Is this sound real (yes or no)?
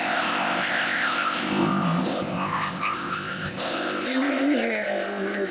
no